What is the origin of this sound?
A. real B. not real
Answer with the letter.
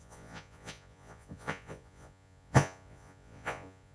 B